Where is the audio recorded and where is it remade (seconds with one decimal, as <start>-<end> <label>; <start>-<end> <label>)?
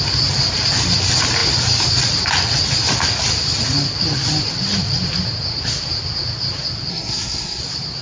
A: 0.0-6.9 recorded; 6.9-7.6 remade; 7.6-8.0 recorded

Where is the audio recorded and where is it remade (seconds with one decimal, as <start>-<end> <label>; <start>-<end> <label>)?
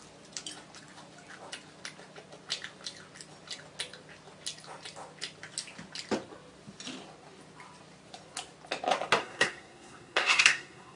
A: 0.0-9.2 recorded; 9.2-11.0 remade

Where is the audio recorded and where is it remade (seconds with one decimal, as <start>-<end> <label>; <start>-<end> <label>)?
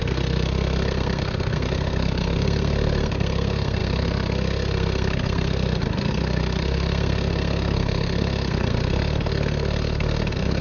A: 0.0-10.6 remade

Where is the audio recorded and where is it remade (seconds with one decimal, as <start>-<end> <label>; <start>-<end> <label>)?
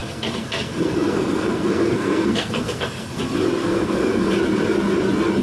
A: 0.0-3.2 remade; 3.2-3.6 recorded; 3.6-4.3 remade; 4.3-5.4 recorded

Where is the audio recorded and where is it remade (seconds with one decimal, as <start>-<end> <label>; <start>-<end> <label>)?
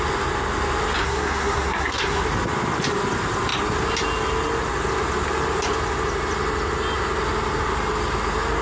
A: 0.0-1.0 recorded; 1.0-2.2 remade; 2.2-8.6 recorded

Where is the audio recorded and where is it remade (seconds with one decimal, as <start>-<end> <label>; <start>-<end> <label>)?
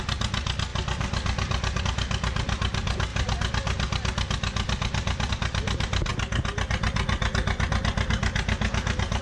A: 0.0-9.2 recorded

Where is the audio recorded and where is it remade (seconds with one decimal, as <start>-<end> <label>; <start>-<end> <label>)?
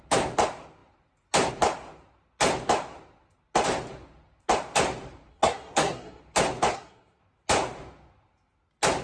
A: 0.0-5.3 recorded; 5.3-6.2 remade; 6.2-6.7 recorded; 6.7-7.2 remade; 7.2-9.0 recorded